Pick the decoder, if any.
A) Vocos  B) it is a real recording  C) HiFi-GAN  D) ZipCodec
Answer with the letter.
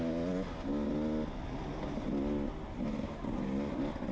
B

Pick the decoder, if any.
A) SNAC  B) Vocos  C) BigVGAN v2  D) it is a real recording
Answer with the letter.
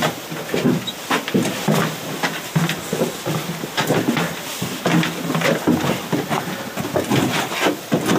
D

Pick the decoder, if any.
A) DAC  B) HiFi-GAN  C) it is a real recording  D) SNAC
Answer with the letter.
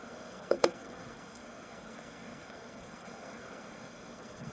D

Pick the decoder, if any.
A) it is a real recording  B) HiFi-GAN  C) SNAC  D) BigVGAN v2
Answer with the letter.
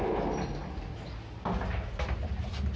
A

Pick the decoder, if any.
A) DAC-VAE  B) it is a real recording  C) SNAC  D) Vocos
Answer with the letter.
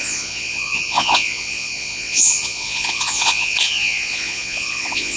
D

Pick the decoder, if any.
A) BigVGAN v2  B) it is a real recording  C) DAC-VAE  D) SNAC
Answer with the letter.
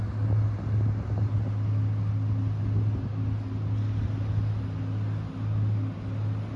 B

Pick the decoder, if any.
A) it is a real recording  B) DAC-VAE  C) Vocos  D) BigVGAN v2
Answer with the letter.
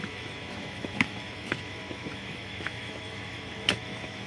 B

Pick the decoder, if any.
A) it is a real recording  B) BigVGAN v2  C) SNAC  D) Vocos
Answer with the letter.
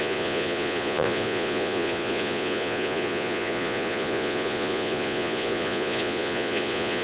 D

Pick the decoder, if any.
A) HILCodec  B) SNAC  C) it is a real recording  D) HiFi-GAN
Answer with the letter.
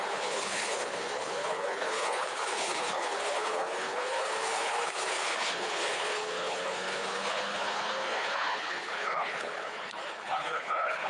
A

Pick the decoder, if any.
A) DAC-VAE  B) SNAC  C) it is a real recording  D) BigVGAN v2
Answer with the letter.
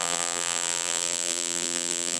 D